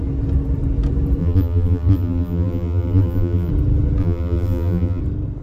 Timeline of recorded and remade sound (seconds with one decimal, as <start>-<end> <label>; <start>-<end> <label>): 0.0-1.2 recorded; 1.2-3.5 remade; 3.5-4.0 recorded; 4.0-5.0 remade; 5.0-5.4 recorded